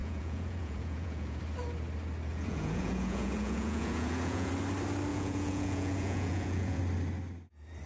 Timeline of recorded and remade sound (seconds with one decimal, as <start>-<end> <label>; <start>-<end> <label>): 0.0-1.4 remade; 1.4-2.3 recorded; 2.3-4.5 remade; 4.5-5.1 recorded; 5.1-6.8 remade; 6.8-7.9 recorded